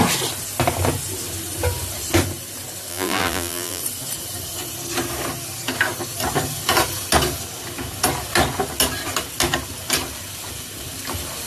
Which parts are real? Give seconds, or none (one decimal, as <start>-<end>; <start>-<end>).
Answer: 0.0-2.9; 3.8-11.5